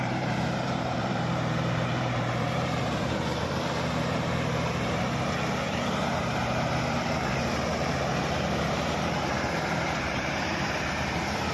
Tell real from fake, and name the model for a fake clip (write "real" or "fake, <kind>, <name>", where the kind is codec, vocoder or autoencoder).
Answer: fake, vocoder, BigVGAN v2